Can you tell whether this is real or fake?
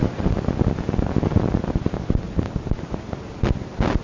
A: real